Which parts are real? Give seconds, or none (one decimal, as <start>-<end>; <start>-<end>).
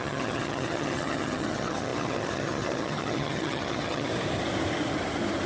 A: 4.1-5.5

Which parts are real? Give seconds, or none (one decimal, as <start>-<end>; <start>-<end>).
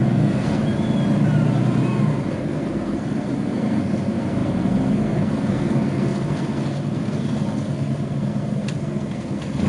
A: 0.6-2.3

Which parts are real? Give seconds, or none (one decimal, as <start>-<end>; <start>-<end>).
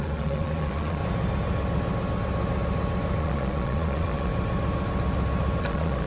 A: 1.0-3.2; 4.3-5.6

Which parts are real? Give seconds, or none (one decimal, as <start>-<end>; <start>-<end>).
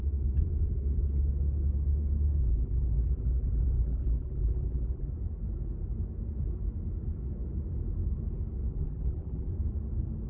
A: 0.0-2.4; 5.1-8.7; 9.5-10.3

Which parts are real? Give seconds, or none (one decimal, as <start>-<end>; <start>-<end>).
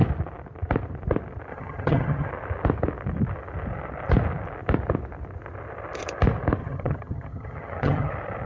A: 0.0-1.5; 2.3-6.6; 8.1-8.5